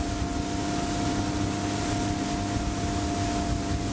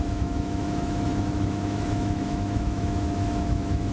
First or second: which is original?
first